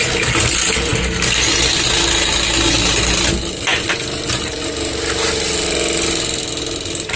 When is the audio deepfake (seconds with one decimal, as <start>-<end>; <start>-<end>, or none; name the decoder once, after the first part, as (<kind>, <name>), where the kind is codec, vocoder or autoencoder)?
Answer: none